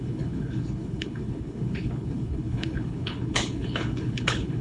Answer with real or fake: fake